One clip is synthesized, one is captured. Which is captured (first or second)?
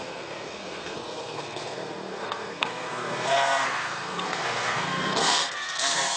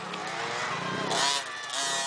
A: second